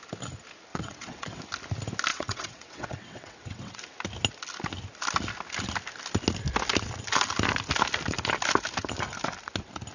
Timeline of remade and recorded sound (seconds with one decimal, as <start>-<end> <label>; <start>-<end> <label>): 0.0-0.7 recorded; 0.7-1.4 remade; 1.4-2.1 recorded; 2.1-3.8 remade; 3.8-9.9 recorded